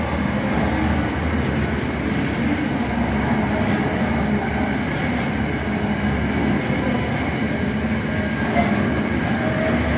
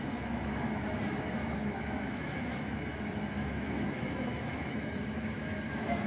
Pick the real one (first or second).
first